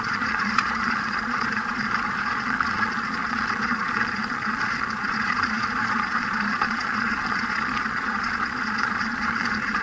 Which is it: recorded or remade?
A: remade